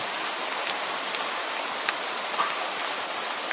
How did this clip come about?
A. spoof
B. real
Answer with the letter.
B